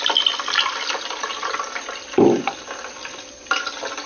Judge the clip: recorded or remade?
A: recorded